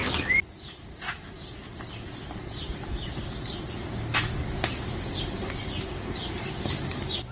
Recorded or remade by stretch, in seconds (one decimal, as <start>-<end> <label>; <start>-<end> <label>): 0.0-7.3 recorded